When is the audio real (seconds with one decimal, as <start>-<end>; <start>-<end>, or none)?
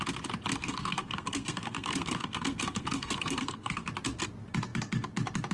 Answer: 0.0-0.6; 3.9-5.5